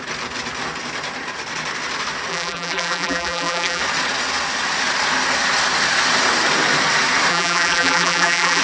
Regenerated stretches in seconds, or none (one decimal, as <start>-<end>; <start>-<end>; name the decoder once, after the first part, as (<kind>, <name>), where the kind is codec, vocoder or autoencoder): 2.3-3.8 (vocoder, BigVGAN v2); 7.3-8.6